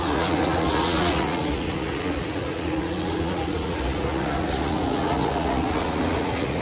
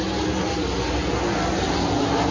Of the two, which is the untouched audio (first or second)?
second